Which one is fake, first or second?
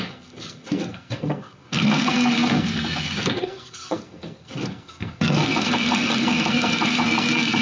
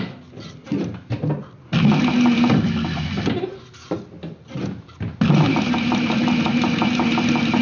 first